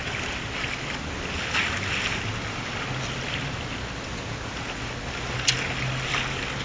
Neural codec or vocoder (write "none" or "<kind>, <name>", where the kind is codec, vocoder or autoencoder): none